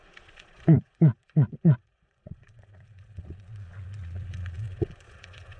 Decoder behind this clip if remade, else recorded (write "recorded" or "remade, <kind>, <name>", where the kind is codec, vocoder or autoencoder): remade, vocoder, Vocos